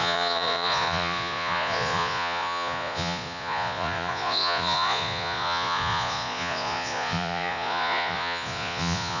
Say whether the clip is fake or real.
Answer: fake